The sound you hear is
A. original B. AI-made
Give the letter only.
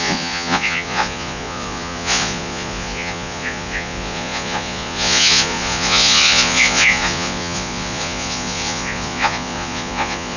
B